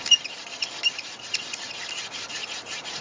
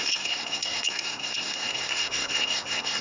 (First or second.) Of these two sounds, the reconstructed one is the second